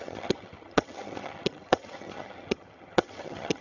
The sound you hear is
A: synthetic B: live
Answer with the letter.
A